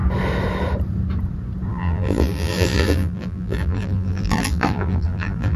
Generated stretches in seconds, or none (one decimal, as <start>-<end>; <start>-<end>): 1.7-5.6

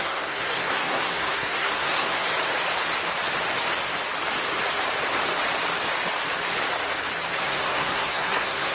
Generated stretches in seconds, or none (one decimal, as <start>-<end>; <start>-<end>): 0.0-2.3; 7.4-8.7

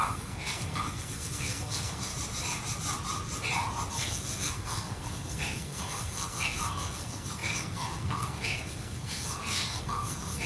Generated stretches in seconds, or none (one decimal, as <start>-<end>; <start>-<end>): 0.0-2.1; 3.9-10.5

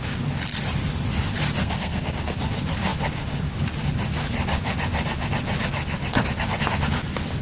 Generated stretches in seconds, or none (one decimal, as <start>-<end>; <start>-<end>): 1.6-2.4

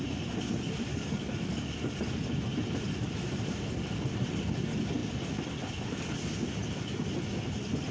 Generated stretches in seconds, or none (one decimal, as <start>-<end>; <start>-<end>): 0.9-1.7

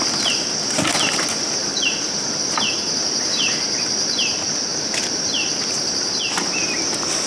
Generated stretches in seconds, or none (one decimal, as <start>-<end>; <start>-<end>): 1.6-2.3; 4.7-5.3

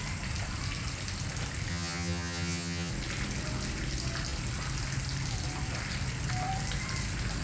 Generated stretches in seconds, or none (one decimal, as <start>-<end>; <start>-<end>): 1.7-2.9

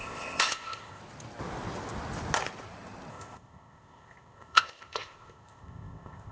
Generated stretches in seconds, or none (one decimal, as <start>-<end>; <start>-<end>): 0.0-1.0; 3.1-6.3